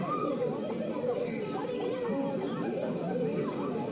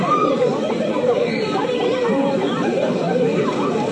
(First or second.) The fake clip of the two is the second